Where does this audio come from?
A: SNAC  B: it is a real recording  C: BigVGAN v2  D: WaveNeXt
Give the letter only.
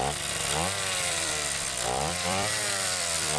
C